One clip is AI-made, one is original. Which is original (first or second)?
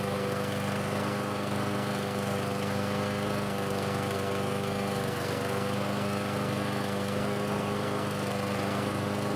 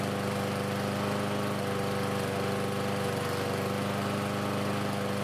second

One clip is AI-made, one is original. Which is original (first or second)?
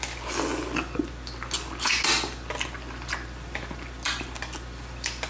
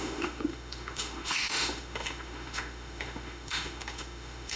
first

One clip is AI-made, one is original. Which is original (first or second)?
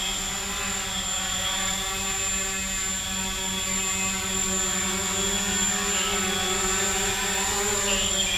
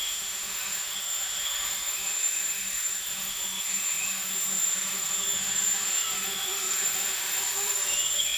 first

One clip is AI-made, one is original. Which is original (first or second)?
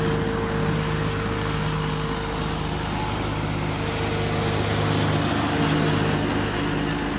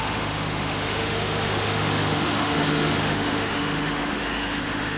first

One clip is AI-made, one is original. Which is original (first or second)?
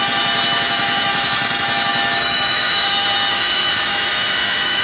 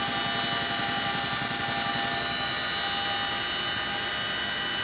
second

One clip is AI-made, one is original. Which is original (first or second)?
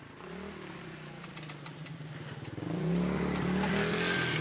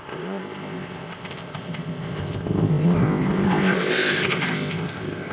first